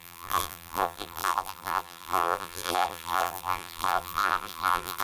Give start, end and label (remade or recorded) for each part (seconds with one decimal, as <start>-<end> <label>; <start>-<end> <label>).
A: 0.0-5.0 remade